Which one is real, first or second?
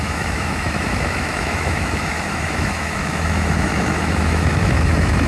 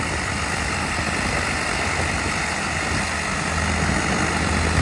second